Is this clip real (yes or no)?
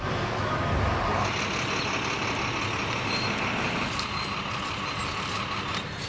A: yes